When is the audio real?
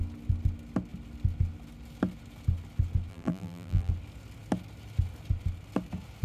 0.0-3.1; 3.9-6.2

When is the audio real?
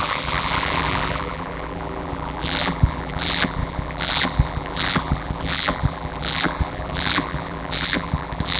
none